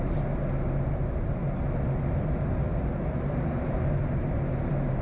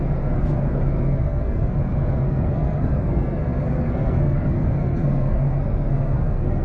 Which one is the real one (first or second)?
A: first